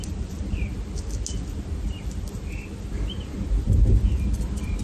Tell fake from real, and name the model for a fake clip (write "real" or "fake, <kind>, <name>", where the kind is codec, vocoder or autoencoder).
real